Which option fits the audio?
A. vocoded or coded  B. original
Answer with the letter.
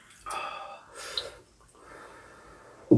B